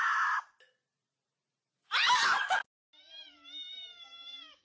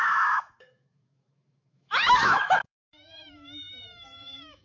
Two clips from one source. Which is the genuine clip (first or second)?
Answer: first